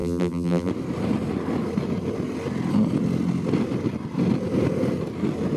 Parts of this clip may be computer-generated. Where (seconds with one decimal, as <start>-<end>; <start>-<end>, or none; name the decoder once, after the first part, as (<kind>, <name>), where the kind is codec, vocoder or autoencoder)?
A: 0.0-0.7 (vocoder, BigVGAN v2)